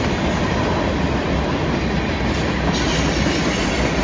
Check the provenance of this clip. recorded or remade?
recorded